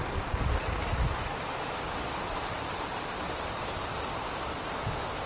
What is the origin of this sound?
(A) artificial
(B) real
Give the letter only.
A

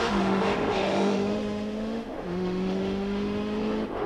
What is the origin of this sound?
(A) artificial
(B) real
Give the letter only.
A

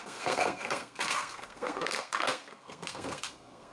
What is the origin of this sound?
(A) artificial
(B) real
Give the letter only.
A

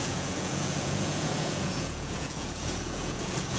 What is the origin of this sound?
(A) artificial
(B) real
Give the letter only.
A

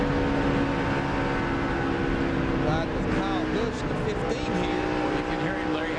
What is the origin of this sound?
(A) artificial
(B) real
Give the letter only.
B